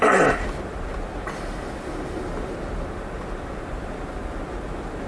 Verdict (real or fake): real